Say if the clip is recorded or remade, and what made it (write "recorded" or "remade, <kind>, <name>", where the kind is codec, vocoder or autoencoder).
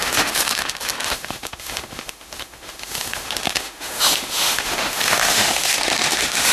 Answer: remade, autoencoder, DAC-VAE